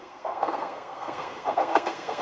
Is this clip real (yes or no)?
no